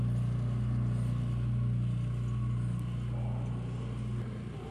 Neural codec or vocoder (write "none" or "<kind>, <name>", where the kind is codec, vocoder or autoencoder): none